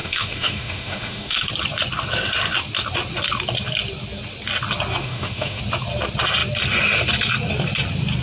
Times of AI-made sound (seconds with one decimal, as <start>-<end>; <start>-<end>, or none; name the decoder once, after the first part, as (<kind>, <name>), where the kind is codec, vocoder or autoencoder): 0.0-1.5 (autoencoder, DAC-VAE); 5.0-5.6